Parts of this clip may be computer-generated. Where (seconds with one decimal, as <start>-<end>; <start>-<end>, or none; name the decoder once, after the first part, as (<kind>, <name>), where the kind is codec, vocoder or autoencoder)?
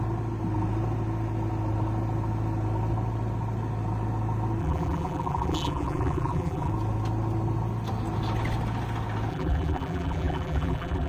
4.6-6.7 (vocoder, BigVGAN v2); 9.3-11.1